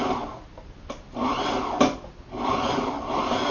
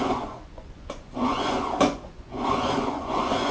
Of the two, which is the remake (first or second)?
second